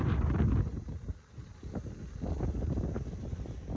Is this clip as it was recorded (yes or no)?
yes